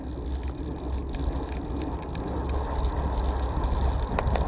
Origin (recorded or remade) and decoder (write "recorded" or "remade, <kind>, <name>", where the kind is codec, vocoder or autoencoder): recorded